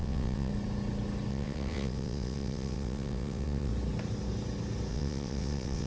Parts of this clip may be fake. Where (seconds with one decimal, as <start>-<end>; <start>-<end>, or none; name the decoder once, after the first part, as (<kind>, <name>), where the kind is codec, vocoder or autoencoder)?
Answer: 0.0-0.5 (vocoder, WaveNeXt); 1.3-3.7; 4.9-5.9